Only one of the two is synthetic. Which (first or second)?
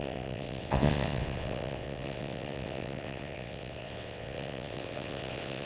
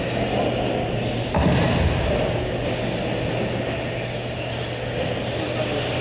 first